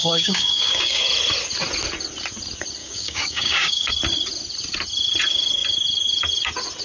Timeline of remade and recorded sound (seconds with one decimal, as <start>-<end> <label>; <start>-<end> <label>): 0.0-1.0 remade; 1.0-2.8 recorded; 2.8-3.9 remade; 3.9-6.8 recorded